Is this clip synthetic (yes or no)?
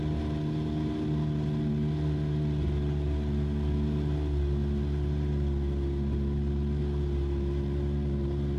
no